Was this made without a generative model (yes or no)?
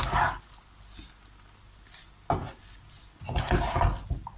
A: yes